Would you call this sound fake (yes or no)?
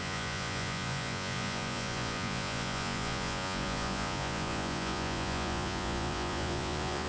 yes